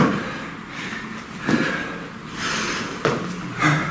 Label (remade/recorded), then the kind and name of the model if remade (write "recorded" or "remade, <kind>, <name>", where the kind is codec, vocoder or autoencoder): recorded